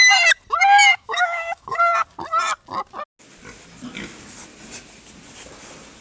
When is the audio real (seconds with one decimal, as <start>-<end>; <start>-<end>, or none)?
0.0-0.8; 1.8-6.0